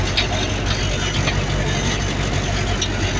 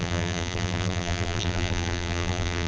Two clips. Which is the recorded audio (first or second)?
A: first